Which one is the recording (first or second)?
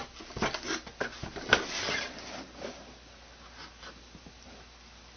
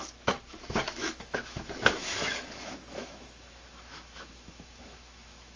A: first